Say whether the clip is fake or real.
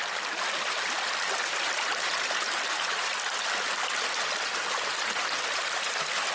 real